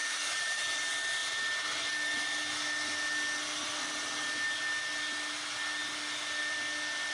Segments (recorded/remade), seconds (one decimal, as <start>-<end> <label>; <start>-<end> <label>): 0.0-0.6 remade; 0.6-7.1 recorded